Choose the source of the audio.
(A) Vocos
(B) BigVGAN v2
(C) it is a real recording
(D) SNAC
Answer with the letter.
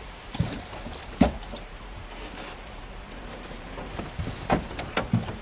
B